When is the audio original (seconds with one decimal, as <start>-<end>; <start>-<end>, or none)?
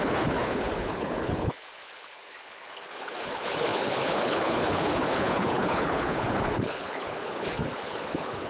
none